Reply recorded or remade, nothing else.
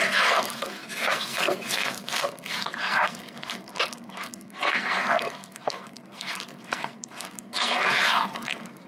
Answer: remade